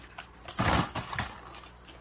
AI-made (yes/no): no